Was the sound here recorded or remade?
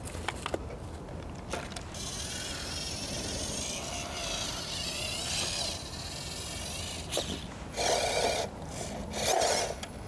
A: recorded